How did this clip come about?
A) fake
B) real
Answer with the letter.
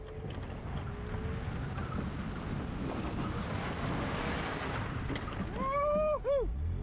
B